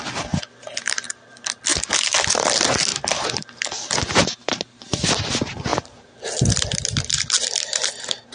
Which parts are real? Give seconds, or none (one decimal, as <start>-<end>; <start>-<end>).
0.0-1.7; 2.3-2.9; 5.3-5.7; 7.9-8.3